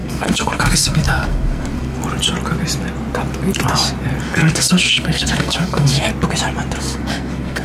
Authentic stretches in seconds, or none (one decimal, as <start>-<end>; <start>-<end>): 2.0-4.2; 6.1-6.8